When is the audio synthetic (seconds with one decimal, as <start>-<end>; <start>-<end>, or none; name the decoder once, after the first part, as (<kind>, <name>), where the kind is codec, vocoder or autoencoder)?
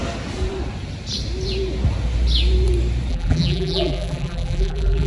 3.1-5.1 (vocoder, BigVGAN v2)